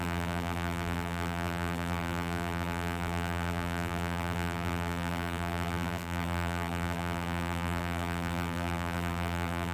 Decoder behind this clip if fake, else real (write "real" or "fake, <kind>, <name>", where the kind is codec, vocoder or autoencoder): fake, vocoder, BigVGAN v2